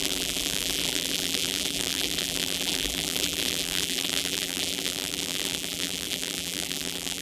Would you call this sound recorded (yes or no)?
no